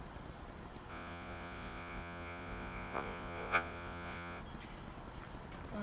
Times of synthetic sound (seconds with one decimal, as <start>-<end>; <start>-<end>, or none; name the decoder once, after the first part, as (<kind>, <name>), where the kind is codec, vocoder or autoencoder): 0.9-4.4 (vocoder, Vocos)